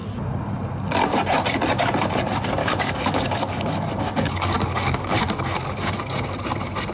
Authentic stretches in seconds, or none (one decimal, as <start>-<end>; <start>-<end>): 0.0-2.6; 6.0-6.9